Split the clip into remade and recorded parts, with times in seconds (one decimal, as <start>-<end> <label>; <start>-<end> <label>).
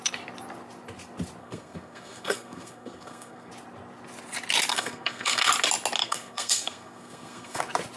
0.0-1.4 recorded; 1.4-3.5 remade; 3.5-4.7 recorded; 4.7-5.5 remade; 5.5-6.0 recorded; 6.0-7.6 remade; 7.6-8.0 recorded